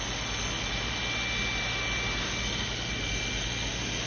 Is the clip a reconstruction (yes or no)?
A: no